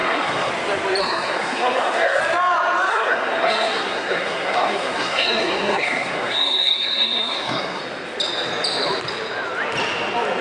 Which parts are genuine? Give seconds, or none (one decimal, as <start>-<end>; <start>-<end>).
0.5-1.0; 2.2-2.9; 7.8-10.4